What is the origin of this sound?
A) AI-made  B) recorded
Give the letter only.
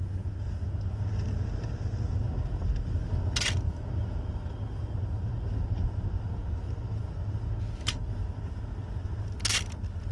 B